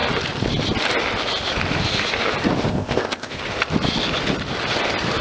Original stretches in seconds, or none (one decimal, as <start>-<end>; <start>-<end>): 0.0-2.7; 3.4-5.2